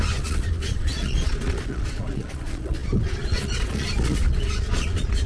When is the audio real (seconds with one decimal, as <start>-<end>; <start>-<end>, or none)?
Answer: none